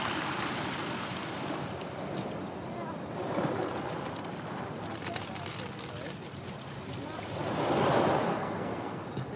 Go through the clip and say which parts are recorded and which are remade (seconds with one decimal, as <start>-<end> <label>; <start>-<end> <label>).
0.0-8.3 recorded; 8.3-9.0 remade; 9.0-9.4 recorded